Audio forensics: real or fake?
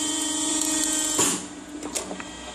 fake